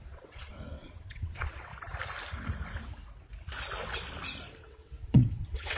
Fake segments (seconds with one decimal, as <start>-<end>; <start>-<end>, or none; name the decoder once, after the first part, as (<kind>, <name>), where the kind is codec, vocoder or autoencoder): 0.0-1.7 (vocoder, WaveNeXt); 4.6-5.8